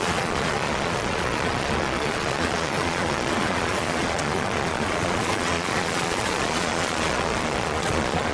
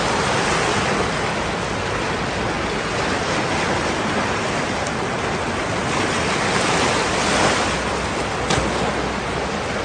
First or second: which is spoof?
first